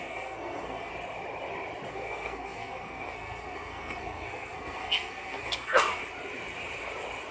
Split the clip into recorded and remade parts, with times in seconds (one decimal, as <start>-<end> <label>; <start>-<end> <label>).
0.0-0.9 remade; 0.9-1.9 recorded; 1.9-6.0 remade; 6.0-7.3 recorded